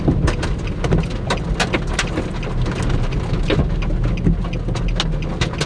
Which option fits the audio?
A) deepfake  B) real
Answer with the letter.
B